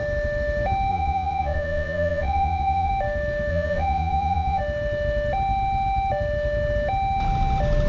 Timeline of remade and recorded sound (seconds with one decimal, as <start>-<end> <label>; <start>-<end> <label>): 0.0-0.9 recorded; 0.9-2.9 remade; 2.9-3.5 recorded; 3.5-4.6 remade; 4.6-7.9 recorded